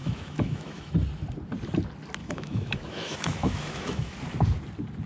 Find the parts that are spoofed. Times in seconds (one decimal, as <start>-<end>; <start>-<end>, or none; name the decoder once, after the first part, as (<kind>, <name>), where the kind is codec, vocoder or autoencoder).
0.0-0.9 (autoencoder, DAC-VAE); 2.2-4.2